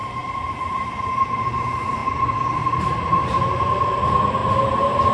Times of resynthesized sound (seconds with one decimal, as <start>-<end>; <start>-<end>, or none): 0.0-2.0; 2.6-4.4